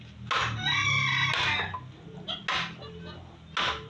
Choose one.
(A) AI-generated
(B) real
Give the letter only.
B